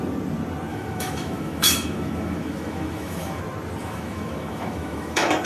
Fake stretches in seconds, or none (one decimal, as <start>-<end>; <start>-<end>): 0.7-3.4; 3.8-5.5